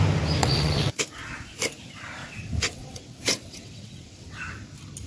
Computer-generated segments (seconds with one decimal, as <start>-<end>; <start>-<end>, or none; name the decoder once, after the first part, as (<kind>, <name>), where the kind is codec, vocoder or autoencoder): 0.4-1.0 (vocoder, WaveNeXt); 2.2-4.4